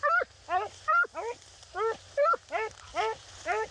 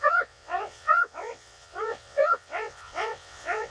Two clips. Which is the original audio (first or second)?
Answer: first